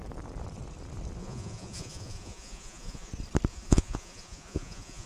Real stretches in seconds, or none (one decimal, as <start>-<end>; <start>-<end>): 0.0-1.2; 3.1-3.5